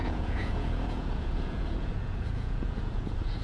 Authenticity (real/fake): fake